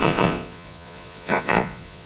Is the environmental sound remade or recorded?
remade